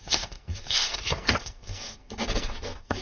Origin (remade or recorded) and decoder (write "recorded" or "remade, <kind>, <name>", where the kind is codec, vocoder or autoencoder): remade, codec, SNAC